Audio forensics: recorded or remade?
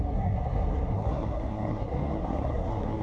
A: remade